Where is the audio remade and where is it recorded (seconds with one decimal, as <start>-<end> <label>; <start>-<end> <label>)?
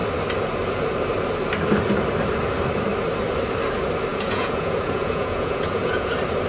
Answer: 0.0-4.1 recorded; 4.1-6.1 remade; 6.1-6.5 recorded